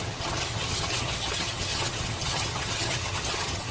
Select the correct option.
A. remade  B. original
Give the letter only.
A